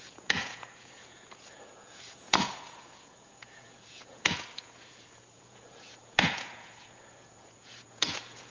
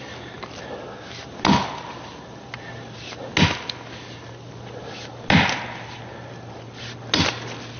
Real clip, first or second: second